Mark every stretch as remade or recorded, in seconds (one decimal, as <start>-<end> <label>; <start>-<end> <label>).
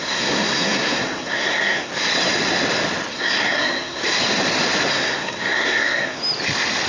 0.0-1.9 remade; 1.9-3.1 recorded; 3.1-4.0 remade; 4.0-4.9 recorded; 4.9-6.2 remade; 6.2-6.9 recorded